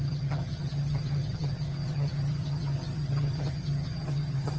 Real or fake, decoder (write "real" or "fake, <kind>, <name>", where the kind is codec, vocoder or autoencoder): fake, vocoder, HiFi-GAN